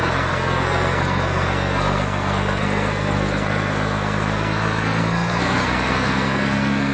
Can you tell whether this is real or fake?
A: fake